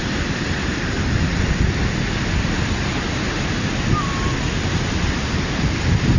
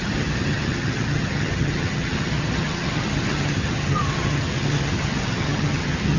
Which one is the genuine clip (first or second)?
first